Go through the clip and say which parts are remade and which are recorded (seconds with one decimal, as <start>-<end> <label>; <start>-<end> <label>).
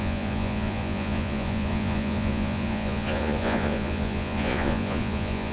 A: 0.0-5.5 remade